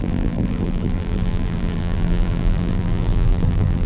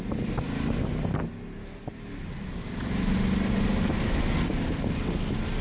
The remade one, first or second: first